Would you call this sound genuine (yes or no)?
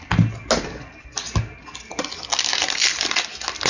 yes